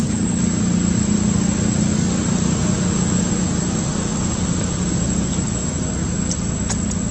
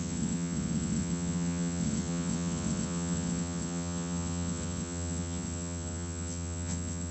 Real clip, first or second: first